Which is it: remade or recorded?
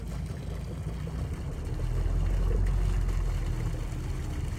recorded